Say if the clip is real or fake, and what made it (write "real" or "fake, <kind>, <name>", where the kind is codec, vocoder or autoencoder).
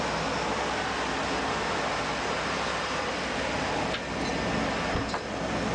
real